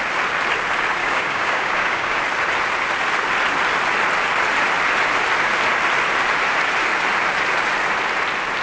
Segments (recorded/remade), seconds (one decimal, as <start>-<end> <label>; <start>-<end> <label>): 0.0-1.0 recorded; 1.0-2.2 remade; 2.2-8.6 recorded